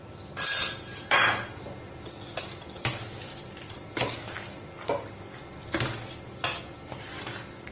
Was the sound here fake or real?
real